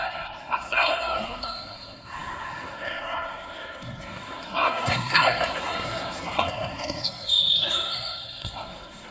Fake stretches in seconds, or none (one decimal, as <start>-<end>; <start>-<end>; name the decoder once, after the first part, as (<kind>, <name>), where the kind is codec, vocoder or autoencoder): 0.0-9.1 (codec, SNAC)

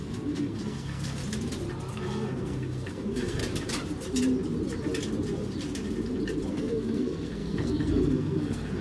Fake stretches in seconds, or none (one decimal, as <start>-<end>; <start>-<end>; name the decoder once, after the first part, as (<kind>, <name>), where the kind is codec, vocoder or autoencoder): 0.0-1.2 (codec, SNAC); 1.9-3.4; 6.5-8.8

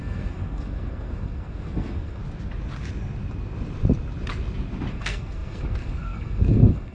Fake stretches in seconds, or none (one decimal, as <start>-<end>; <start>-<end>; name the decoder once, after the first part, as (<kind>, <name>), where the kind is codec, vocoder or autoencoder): 0.0-2.2 (codec, SNAC); 4.9-6.9

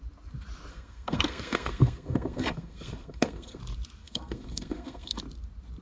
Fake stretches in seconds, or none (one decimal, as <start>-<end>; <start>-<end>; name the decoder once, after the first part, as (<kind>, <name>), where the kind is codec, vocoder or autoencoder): 0.7-3.6 (codec, SNAC); 4.0-5.2

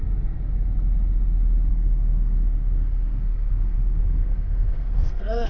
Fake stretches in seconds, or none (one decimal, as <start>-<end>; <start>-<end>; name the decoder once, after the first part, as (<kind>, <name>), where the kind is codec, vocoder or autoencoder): 1.7-5.5 (codec, SNAC)

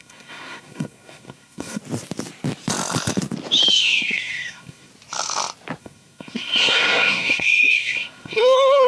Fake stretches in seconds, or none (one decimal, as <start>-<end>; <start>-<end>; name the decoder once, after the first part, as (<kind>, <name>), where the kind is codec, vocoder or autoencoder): 0.0-1.8 (codec, SNAC); 3.8-4.9; 5.8-8.9